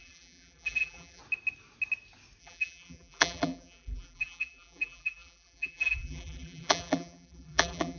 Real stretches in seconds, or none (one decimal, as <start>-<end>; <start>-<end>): 1.2-2.4